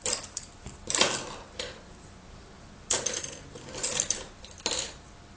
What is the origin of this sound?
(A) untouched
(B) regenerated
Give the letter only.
A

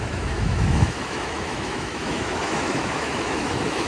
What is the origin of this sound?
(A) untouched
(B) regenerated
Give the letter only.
B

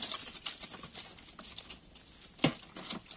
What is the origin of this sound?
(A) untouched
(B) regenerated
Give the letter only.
A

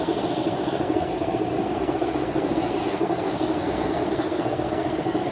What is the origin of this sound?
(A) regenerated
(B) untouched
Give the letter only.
A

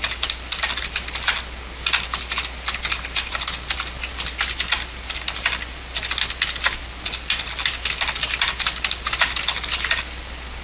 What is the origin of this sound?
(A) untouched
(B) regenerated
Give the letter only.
A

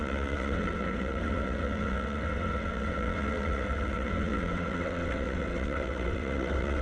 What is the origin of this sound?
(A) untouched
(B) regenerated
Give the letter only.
B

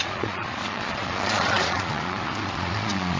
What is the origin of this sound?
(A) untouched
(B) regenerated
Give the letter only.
B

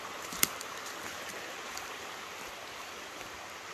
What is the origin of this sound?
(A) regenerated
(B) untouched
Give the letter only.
B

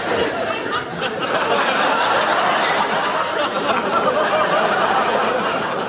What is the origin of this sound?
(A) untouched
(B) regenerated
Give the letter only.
A